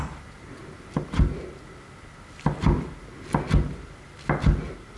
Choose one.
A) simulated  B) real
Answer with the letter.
B